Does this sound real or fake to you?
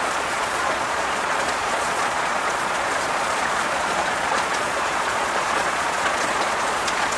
fake